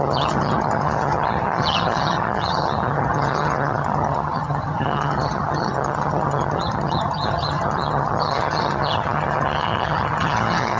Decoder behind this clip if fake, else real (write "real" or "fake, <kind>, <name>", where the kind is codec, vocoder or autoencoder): fake, vocoder, HiFi-GAN